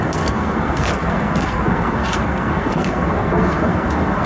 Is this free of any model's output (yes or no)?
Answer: no